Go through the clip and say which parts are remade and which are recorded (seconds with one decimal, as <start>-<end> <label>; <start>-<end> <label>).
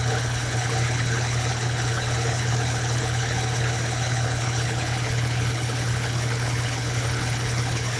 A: 0.0-8.0 remade